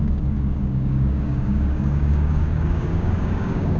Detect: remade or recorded remade